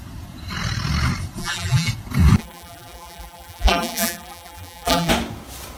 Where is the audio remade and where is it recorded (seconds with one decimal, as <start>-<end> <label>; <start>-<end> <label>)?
0.0-1.4 recorded; 1.4-1.9 remade; 1.9-2.4 recorded; 2.4-5.1 remade; 5.1-5.8 recorded